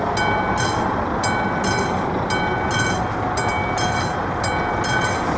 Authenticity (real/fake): real